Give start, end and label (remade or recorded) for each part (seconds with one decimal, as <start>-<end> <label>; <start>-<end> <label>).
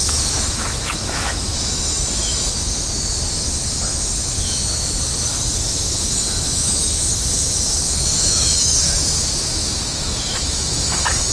0.0-11.3 remade